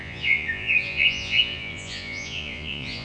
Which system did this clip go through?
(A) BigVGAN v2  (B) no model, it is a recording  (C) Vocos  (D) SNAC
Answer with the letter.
C